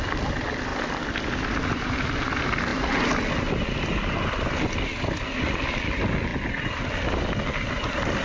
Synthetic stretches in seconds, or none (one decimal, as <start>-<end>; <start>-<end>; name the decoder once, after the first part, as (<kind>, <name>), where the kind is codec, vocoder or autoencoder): none